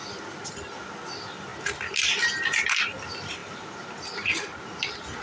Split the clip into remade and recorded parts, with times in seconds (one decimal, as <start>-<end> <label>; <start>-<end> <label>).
0.0-5.2 recorded